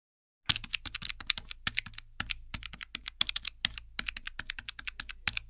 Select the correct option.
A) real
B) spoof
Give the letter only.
A